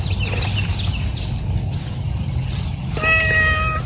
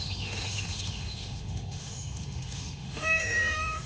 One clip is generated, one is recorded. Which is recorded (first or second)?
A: first